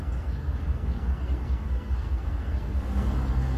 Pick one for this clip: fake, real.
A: fake